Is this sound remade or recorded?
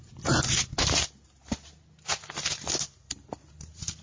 recorded